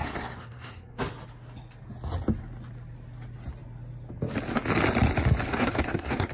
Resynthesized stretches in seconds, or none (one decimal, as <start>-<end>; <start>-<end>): 0.0-1.0; 5.5-6.3